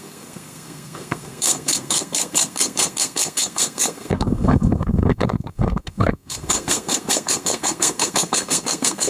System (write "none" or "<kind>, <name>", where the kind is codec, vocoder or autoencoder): codec, SNAC